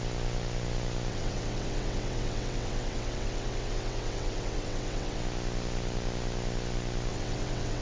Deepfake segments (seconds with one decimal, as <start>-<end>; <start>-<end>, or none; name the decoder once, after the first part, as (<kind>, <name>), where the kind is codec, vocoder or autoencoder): 1.1-5.2 (vocoder, WaveNeXt); 7.1-7.8